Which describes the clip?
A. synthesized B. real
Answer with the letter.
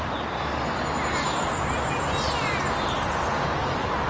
B